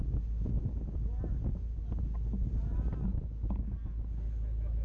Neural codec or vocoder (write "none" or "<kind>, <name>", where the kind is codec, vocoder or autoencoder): none